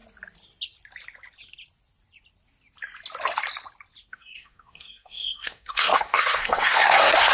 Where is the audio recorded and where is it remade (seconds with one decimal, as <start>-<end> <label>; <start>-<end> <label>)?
0.0-4.1 recorded; 4.1-7.3 remade